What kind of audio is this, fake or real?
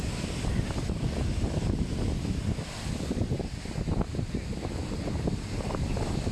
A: real